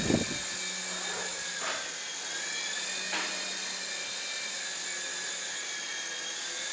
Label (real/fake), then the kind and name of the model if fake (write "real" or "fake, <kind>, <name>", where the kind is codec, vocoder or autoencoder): real